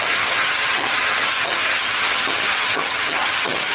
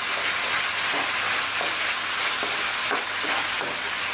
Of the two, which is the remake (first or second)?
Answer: first